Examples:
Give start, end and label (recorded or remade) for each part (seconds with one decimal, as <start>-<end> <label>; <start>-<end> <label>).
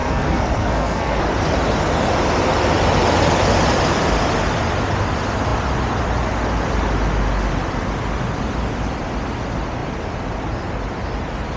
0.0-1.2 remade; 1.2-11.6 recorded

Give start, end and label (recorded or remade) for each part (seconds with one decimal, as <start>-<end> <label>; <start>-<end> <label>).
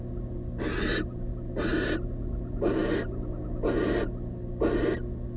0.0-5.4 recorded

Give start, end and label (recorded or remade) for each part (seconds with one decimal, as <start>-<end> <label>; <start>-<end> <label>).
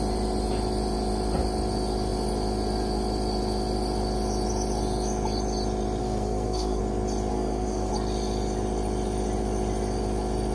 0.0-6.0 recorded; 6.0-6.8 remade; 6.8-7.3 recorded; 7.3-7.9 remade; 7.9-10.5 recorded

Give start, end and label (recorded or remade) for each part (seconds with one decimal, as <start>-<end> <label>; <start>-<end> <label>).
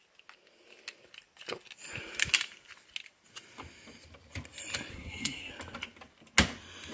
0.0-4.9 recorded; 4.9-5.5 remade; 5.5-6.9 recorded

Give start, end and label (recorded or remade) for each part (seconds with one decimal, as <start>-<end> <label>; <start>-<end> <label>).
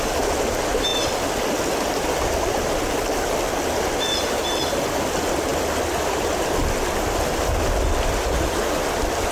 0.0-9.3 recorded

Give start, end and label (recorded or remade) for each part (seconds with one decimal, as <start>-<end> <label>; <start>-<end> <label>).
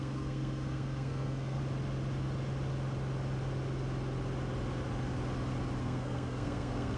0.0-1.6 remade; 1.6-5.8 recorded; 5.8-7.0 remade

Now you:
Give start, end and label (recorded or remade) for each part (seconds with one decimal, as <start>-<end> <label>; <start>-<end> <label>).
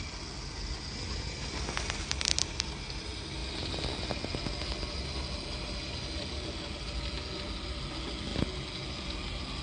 0.0-9.6 recorded